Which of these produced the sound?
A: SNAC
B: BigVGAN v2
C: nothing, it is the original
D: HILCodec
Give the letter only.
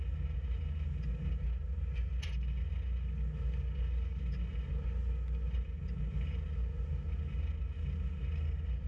C